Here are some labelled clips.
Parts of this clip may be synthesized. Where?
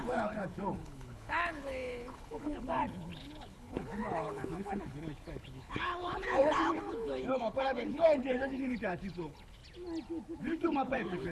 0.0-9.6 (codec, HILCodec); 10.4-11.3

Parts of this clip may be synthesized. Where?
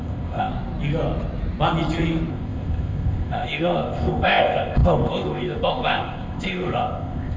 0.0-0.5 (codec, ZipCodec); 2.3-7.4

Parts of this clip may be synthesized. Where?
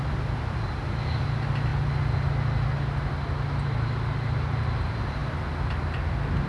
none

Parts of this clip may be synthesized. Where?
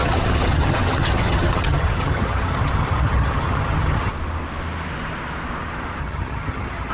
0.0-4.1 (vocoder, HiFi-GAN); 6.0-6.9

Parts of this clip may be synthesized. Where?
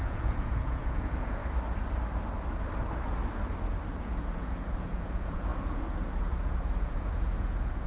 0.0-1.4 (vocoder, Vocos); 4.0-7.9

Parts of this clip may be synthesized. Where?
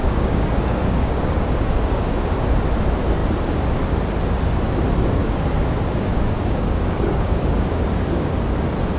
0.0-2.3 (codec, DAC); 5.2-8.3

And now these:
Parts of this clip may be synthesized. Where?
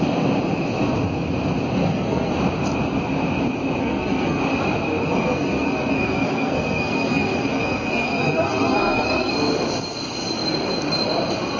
1.8-2.3 (codec, SNAC); 3.8-4.4; 5.0-9.3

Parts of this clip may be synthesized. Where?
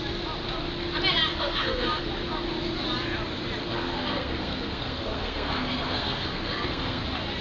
1.3-2.0 (codec, SNAC); 3.6-7.0